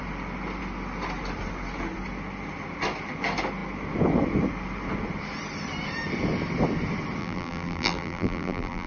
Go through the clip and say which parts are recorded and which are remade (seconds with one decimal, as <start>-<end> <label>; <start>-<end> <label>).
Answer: 0.0-7.2 recorded; 7.2-8.9 remade